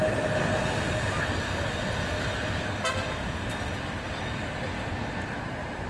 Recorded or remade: recorded